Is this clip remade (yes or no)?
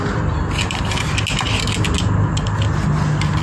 no